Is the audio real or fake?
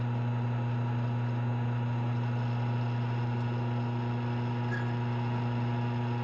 real